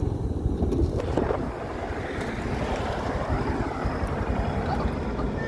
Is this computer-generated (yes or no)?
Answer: no